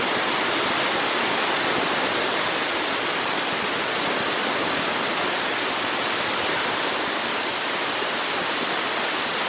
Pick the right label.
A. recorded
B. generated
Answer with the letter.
A